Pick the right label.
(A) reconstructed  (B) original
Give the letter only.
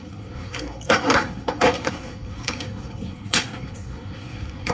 A